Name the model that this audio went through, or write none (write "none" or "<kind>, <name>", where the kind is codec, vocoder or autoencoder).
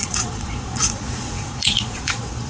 vocoder, Vocos